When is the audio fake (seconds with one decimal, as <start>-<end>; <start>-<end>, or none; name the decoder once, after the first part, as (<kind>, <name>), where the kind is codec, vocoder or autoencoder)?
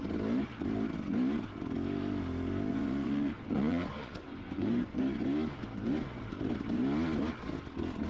2.7-5.0 (vocoder, Vocos)